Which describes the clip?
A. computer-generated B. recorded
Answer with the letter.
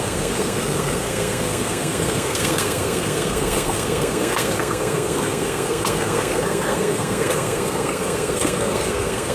A